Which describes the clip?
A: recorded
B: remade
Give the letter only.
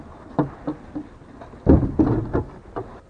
A